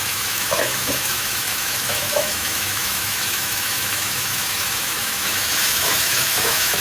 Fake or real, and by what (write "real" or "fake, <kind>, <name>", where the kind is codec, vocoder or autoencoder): fake, autoencoder, DAC-VAE